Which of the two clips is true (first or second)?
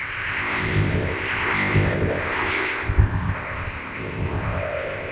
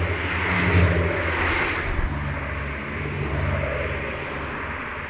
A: second